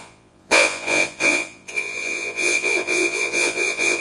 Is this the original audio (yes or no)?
no